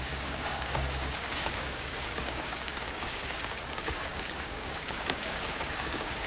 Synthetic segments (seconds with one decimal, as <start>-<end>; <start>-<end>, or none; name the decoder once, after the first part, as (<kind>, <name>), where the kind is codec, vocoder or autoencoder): 0.0-6.3 (codec, DAC)